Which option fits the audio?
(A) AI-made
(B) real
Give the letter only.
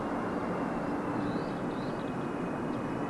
B